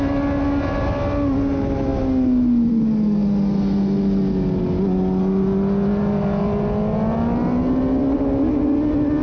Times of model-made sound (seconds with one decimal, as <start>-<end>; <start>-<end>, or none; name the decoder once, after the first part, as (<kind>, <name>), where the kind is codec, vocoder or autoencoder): none

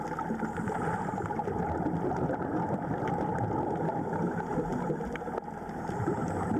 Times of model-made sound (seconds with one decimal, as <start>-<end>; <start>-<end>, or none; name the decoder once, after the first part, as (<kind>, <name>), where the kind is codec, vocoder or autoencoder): none

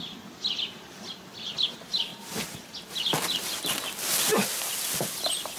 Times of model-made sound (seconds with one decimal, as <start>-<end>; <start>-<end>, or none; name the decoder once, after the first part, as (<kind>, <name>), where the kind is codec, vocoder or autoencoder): none

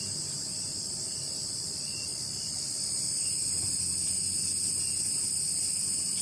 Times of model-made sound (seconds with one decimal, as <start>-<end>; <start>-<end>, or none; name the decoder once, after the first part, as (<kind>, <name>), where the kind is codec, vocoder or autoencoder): none

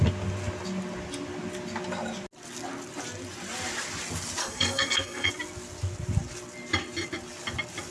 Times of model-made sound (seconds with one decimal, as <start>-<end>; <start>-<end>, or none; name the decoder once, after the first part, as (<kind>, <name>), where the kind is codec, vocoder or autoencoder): 4.4-5.3 (codec, SNAC)

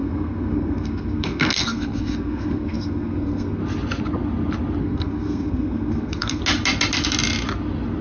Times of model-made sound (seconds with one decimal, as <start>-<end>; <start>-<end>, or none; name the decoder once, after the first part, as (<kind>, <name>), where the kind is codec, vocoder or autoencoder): 0.0-3.6 (codec, SNAC); 4.8-6.4

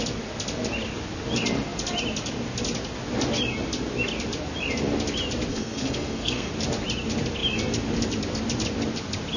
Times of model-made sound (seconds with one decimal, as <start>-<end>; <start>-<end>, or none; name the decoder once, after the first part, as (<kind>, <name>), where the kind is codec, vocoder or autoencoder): 5.5-6.5 (codec, SNAC)